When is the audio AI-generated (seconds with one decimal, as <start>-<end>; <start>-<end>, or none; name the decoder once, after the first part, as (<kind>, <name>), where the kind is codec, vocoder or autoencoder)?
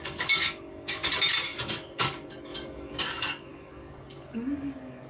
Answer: 0.0-1.0 (codec, DAC); 1.7-5.1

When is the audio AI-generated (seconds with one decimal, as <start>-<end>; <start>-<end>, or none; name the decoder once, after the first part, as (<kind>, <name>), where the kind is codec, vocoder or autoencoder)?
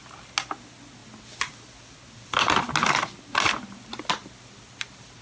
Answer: none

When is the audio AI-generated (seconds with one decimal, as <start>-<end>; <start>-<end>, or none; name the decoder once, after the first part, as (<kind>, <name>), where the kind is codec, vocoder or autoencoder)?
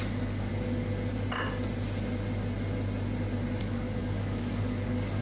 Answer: 0.0-0.5 (codec, DAC); 3.6-5.2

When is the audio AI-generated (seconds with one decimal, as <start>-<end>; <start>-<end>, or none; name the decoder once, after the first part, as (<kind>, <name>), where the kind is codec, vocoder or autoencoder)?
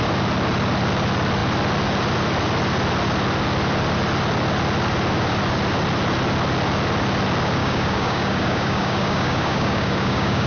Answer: 7.6-10.5 (codec, DAC)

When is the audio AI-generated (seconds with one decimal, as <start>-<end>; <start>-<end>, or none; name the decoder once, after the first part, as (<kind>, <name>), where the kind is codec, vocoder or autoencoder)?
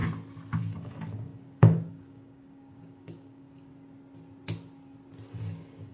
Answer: 0.6-3.7 (codec, DAC); 5.3-5.9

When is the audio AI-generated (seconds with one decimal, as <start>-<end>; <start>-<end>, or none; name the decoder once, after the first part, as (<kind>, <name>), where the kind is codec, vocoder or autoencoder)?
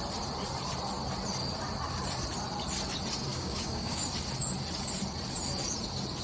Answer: 3.3-4.0 (codec, DAC)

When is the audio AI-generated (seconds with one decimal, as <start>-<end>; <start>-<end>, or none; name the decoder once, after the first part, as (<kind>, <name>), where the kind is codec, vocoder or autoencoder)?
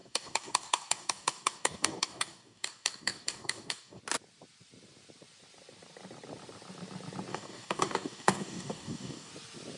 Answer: 0.0-4.0 (codec, DAC); 7.3-9.3